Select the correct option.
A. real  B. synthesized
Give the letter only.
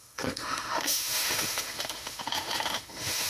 B